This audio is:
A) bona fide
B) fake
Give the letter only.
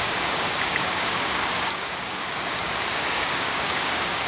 B